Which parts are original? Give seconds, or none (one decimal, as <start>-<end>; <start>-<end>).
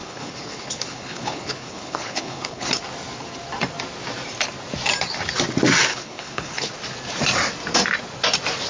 2.7-5.9; 6.7-8.7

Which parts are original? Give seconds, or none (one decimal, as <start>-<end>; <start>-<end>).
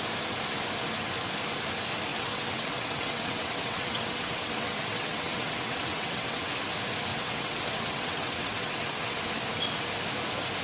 0.0-2.1; 6.5-7.1; 9.2-10.6